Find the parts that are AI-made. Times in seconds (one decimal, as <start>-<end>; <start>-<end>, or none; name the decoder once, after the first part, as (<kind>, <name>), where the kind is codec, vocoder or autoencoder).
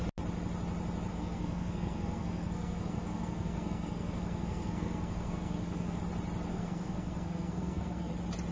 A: 1.1-6.0 (codec, SNAC); 6.5-8.1